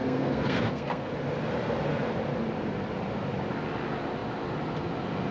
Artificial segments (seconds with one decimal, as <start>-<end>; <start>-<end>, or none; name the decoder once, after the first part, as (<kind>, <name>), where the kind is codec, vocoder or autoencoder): 0.0-1.1 (codec, SNAC)